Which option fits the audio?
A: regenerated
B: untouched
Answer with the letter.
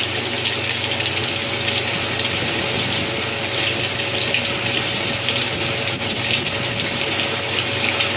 B